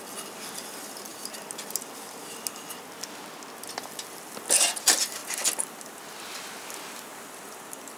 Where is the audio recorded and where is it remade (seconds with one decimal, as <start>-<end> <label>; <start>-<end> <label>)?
0.0-5.2 recorded; 5.2-5.7 remade; 5.7-7.1 recorded; 7.1-8.0 remade